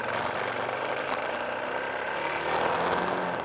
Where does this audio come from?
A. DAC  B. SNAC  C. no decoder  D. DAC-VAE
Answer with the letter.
C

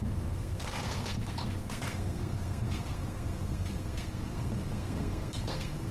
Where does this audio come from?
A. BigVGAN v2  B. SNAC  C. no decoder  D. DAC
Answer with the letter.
B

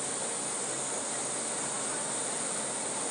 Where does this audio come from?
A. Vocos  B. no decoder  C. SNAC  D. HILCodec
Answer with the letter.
B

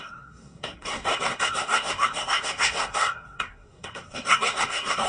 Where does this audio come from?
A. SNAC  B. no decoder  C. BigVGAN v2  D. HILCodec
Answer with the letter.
A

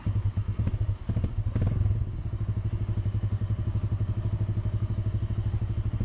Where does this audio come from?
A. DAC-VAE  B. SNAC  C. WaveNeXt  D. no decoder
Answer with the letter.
D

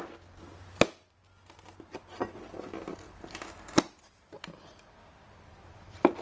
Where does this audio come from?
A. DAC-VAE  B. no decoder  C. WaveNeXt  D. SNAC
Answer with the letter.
B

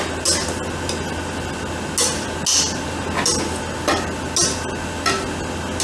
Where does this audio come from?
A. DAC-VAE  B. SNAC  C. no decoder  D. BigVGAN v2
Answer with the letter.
C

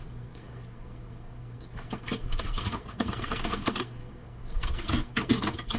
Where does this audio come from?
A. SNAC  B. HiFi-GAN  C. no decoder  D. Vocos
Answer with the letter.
A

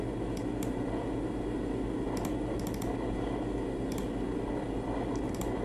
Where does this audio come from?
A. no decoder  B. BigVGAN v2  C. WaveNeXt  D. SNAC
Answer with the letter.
A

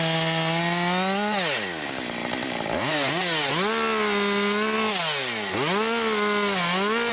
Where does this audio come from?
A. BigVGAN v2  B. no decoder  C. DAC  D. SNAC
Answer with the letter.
B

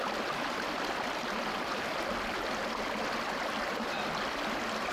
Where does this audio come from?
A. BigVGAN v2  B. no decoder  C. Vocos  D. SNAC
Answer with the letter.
B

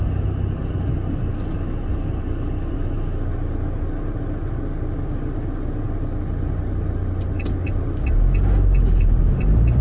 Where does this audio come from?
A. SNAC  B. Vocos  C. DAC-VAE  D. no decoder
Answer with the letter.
D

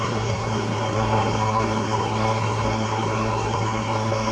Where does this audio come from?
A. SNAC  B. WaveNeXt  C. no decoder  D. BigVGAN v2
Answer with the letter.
A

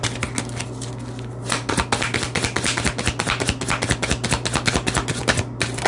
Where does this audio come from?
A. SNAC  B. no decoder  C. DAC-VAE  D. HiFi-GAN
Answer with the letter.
B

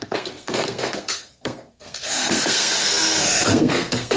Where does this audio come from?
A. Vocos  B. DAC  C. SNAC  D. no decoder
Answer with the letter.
C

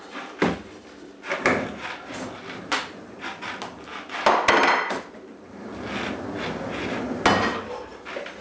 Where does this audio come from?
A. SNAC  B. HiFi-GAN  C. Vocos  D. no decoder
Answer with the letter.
D